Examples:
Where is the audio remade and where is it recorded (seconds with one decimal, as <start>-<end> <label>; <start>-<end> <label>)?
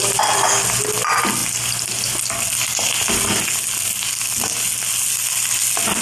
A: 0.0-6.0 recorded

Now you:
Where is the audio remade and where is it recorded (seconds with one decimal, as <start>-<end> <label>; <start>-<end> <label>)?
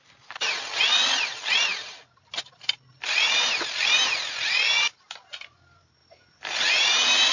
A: 0.0-7.3 recorded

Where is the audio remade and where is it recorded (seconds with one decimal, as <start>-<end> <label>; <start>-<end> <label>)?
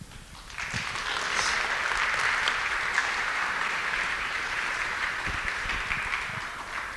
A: 0.0-3.0 recorded; 3.0-5.7 remade; 5.7-7.0 recorded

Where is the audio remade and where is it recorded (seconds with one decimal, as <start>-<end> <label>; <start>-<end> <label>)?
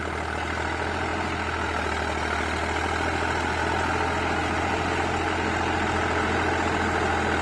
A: 0.0-7.4 recorded